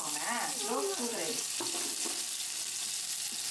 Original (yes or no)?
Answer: yes